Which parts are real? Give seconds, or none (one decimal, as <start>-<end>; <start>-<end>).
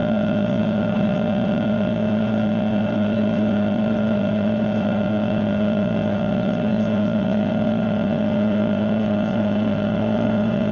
none